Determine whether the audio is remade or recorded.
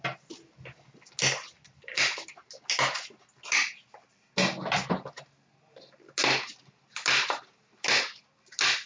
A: recorded